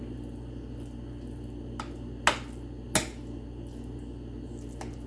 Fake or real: real